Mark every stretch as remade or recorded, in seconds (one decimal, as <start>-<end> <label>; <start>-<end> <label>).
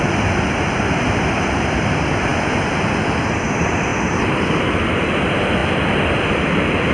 0.0-2.3 remade; 2.3-3.2 recorded; 3.2-6.9 remade